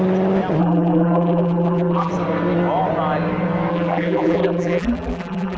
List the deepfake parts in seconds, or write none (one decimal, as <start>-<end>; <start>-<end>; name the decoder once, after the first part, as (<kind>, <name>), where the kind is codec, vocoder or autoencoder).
0.6-2.1 (vocoder, BigVGAN v2); 3.7-5.6